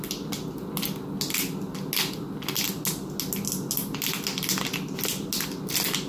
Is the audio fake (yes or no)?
no